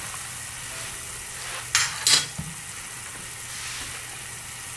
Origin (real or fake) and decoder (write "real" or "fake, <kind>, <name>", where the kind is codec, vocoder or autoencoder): real